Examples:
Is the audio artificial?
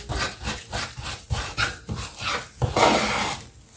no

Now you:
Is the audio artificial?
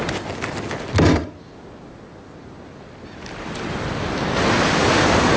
no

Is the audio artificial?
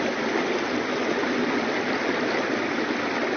no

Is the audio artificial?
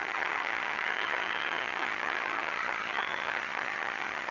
yes